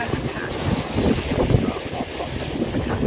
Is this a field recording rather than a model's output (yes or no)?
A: yes